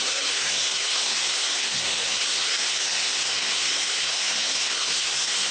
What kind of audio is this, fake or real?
fake